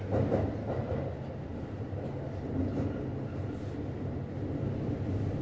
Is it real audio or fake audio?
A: real